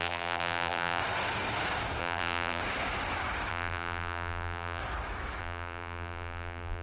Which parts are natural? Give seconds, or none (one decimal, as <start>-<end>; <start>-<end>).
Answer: 1.0-2.0; 2.6-3.5; 4.8-5.4